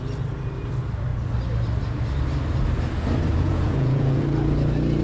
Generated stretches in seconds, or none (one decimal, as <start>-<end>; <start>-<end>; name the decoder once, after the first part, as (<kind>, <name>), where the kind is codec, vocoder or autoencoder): 3.3-4.2 (vocoder, Vocos)